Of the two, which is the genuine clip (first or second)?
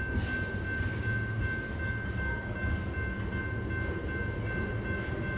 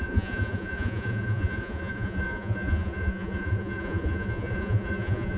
first